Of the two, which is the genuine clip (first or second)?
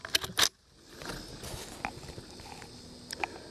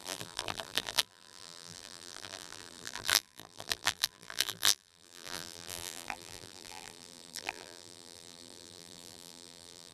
first